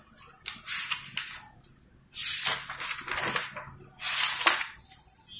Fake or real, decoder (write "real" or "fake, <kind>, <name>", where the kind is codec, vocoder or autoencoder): real